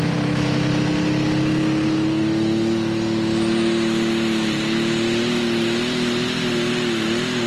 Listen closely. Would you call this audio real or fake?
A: real